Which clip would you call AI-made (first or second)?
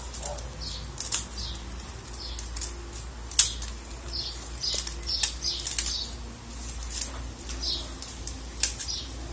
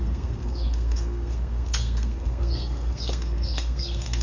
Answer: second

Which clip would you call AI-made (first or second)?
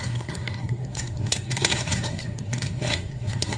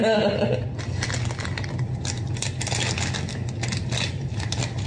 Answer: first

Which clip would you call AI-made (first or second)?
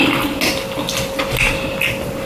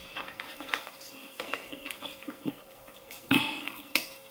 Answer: second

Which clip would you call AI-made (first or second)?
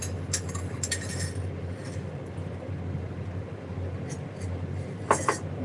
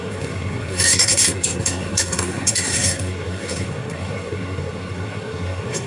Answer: second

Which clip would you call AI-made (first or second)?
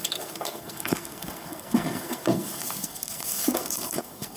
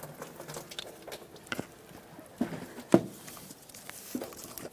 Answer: first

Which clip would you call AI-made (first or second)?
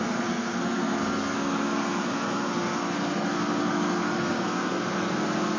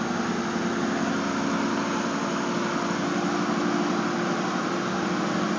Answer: first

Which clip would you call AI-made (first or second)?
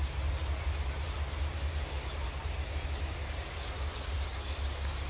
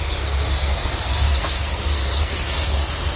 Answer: second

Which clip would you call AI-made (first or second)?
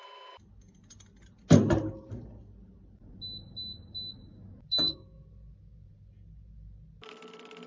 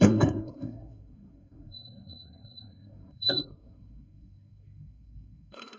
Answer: second